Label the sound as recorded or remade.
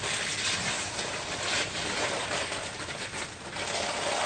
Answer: recorded